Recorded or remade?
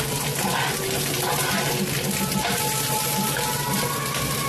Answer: recorded